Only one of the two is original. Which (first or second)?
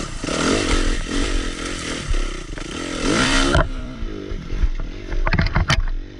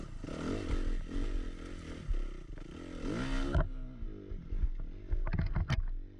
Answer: second